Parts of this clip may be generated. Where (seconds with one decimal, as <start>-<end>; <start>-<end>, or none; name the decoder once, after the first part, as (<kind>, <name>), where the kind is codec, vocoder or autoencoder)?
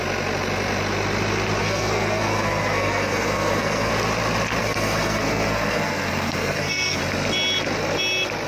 1.6-3.9 (codec, SNAC); 4.6-7.0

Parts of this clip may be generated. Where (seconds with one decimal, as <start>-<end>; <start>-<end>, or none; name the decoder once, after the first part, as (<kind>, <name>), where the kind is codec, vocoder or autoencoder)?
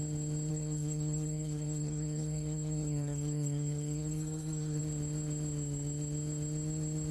0.5-4.8 (codec, SNAC)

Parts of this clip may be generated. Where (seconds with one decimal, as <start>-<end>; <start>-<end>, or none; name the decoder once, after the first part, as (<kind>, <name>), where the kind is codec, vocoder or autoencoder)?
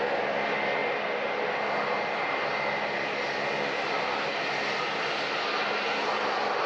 none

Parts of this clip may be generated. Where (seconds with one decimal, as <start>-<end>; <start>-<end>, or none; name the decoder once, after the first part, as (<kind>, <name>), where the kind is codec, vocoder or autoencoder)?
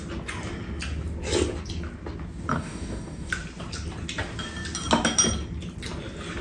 2.5-3.3 (codec, DAC)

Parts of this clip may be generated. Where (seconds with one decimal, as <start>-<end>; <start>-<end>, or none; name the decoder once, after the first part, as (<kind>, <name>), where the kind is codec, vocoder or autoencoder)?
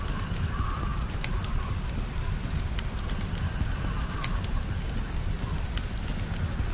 none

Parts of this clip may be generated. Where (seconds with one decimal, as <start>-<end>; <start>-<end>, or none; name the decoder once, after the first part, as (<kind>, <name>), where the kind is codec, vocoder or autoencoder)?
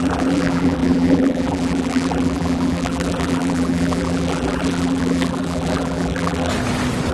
0.0-6.5 (vocoder, BigVGAN v2)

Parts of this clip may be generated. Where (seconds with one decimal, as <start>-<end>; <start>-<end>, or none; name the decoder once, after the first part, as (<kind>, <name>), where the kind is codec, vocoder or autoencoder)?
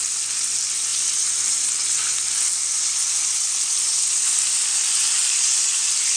none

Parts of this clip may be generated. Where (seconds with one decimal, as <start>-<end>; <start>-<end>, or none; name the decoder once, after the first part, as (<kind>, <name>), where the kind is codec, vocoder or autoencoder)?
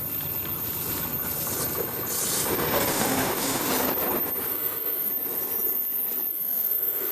2.9-3.7 (autoencoder, DAC-VAE); 4.5-5.1; 6.3-7.1